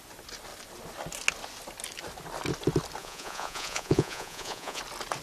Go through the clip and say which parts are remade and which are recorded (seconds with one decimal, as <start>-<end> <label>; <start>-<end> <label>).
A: 0.0-3.0 recorded; 3.0-4.8 remade; 4.8-5.2 recorded